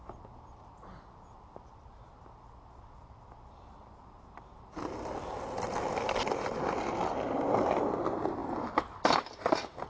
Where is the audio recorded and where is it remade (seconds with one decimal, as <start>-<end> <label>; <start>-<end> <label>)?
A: 0.0-9.9 recorded